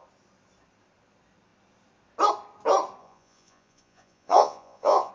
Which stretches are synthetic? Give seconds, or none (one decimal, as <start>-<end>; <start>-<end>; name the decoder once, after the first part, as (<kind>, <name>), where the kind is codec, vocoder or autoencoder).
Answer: 3.0-5.1 (vocoder, Vocos)